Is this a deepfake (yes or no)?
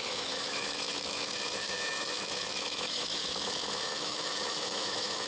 yes